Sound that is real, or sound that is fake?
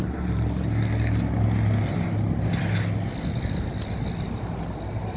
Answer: real